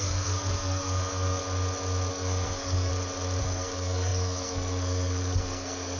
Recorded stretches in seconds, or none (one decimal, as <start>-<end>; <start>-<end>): 1.4-2.1; 2.9-3.4